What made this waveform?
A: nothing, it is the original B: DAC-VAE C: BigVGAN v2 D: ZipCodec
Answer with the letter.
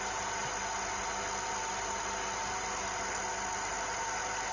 A